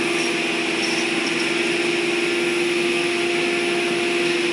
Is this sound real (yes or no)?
yes